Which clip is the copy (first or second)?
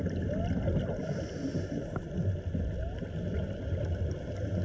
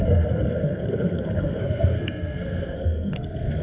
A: second